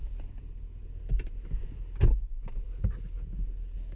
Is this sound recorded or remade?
recorded